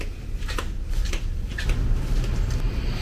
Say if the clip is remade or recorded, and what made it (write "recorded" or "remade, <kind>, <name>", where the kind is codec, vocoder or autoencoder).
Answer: recorded